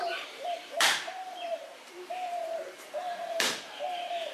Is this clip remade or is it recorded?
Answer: remade